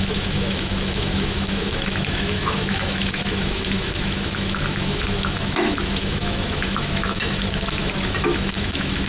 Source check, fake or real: fake